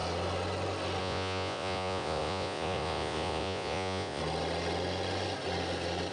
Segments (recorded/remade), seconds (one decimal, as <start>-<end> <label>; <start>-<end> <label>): 0.0-1.0 recorded; 1.0-4.2 remade; 4.2-6.1 recorded